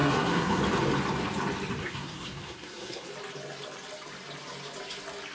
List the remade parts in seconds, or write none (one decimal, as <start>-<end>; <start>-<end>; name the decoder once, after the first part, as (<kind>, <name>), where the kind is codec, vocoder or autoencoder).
0.0-0.6 (codec, SNAC); 1.8-3.1

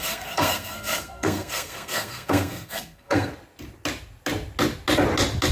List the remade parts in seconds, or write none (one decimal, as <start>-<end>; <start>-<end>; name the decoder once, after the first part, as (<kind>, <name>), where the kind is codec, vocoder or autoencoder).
0.0-3.3 (codec, SNAC)

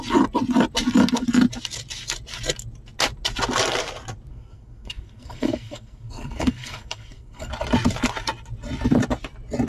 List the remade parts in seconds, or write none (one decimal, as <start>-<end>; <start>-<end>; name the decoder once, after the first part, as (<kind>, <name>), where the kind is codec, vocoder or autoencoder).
4.3-7.5 (codec, SNAC)

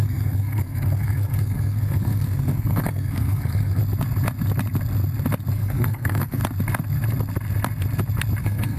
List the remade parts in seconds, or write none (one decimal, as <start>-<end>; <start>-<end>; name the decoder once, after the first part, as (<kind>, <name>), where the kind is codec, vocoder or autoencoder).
0.0-3.8 (codec, SNAC); 5.5-6.4; 8.4-8.8

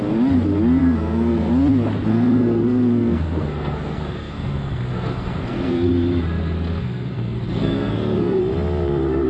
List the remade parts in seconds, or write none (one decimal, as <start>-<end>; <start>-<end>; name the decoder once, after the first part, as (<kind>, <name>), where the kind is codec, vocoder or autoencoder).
0.8-1.5 (codec, SNAC); 2.1-5.9; 6.8-8.4

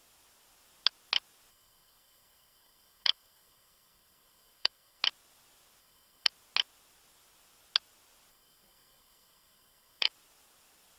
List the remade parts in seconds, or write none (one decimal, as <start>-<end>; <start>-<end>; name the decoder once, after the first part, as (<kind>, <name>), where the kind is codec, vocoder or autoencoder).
1.5-5.0 (codec, SNAC); 5.8-6.3; 8.3-10.1

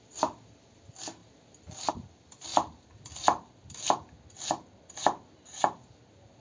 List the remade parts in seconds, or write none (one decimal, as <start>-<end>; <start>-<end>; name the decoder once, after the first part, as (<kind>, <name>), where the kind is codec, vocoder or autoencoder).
none